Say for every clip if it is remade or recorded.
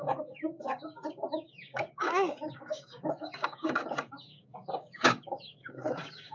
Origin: remade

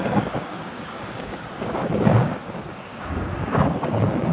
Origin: remade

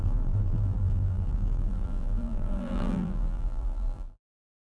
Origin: remade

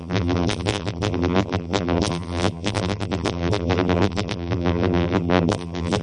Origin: remade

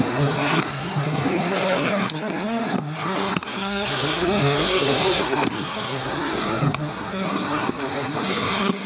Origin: remade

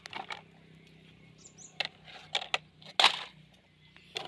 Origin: recorded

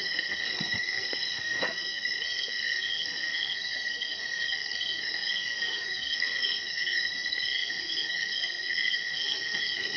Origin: remade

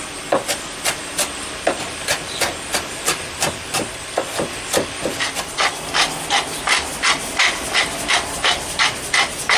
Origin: recorded